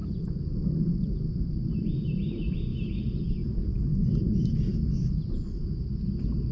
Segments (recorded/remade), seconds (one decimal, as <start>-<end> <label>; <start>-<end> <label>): 0.0-6.5 recorded